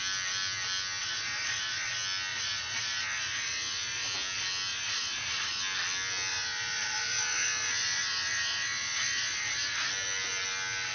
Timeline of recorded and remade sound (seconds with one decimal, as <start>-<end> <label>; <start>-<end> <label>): 0.0-1.0 recorded; 1.0-1.9 remade; 1.9-2.3 recorded; 2.3-4.1 remade; 4.1-4.7 recorded; 4.7-5.6 remade; 5.6-6.3 recorded; 6.3-9.9 remade; 9.9-10.9 recorded

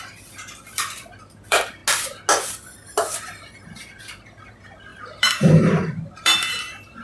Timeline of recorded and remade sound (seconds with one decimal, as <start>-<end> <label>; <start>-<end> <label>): 0.0-1.8 remade; 1.8-4.0 recorded; 4.0-7.0 remade

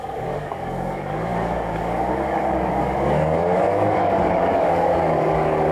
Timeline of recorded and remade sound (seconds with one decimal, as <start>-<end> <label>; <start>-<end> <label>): 0.0-5.7 remade

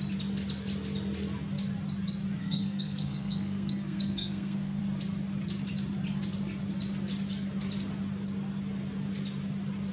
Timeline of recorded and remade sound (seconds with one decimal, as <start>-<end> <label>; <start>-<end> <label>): 0.0-2.4 recorded; 2.4-4.8 remade; 4.8-9.9 recorded

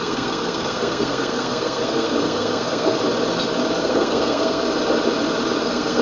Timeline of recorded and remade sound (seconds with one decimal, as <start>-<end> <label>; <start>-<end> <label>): 0.0-3.0 remade; 3.0-3.8 recorded; 3.8-4.6 remade; 4.6-5.6 recorded; 5.6-6.0 remade

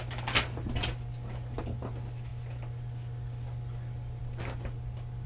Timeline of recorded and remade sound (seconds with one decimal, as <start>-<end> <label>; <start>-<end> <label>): 0.0-5.3 recorded

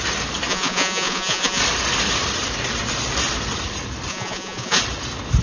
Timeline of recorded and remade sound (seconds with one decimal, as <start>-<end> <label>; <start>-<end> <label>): 0.0-0.5 recorded; 0.5-1.6 remade; 1.6-4.1 recorded; 4.1-4.8 remade; 4.8-5.4 recorded